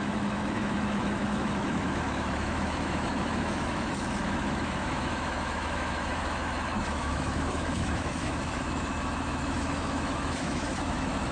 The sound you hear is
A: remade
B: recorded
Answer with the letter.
A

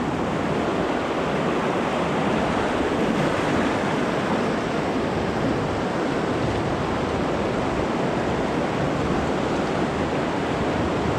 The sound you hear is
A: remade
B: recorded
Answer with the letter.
B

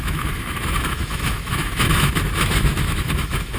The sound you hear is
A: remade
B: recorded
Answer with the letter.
A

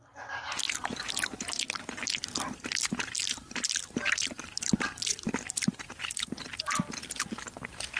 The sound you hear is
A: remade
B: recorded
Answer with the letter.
B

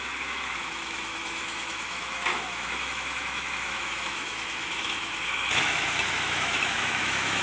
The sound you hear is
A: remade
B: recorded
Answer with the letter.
A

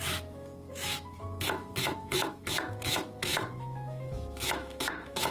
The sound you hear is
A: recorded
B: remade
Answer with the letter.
B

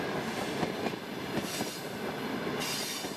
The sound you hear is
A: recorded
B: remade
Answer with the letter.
A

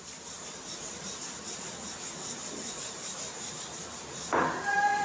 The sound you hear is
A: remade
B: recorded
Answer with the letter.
B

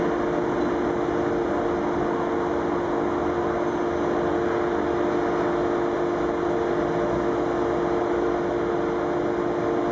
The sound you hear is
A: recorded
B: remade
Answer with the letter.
A